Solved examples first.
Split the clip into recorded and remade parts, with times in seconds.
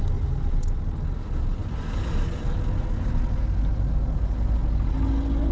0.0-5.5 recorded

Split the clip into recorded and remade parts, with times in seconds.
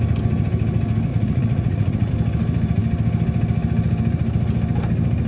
0.0-1.1 recorded; 1.1-2.1 remade; 2.1-5.3 recorded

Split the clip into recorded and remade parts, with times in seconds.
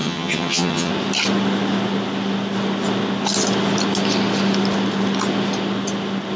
0.0-0.9 remade; 0.9-6.4 recorded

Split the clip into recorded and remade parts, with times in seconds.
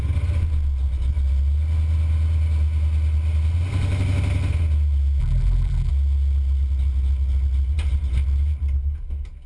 0.0-5.2 recorded; 5.2-5.9 remade; 5.9-9.5 recorded